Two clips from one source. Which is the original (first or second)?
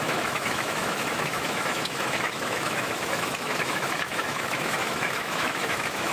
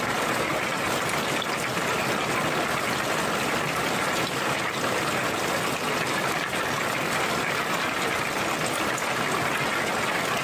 second